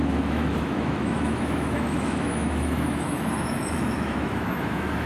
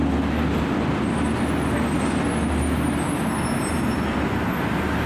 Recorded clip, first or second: second